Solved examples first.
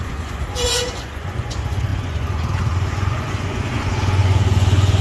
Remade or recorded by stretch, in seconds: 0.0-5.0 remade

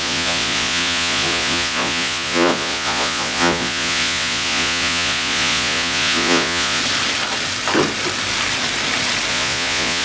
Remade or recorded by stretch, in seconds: 0.0-6.8 remade; 6.8-9.3 recorded; 9.3-10.0 remade

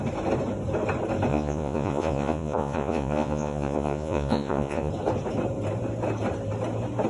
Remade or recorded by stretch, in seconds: 0.0-1.3 recorded; 1.3-4.9 remade; 4.9-7.1 recorded